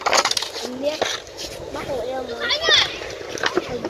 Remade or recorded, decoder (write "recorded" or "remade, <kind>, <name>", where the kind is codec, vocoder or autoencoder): recorded